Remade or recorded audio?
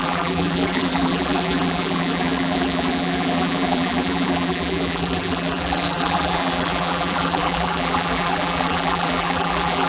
remade